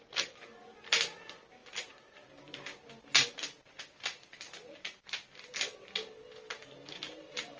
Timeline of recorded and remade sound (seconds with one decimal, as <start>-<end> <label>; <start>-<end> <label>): 0.0-7.6 recorded

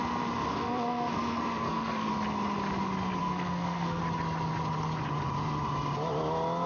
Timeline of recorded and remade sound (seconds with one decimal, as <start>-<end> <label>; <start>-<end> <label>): 0.0-0.5 recorded; 0.5-2.1 remade; 2.1-3.2 recorded; 3.2-4.0 remade; 4.0-6.7 recorded